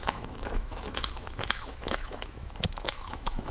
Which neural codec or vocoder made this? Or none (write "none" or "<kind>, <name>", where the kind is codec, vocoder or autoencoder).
autoencoder, DAC-VAE